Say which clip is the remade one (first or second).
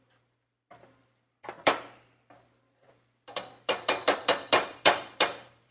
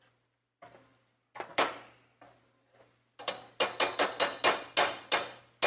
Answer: first